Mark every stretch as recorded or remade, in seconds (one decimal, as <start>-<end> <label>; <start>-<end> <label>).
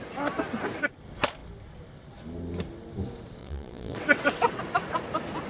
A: 0.0-3.4 recorded; 3.4-4.6 remade; 4.6-5.5 recorded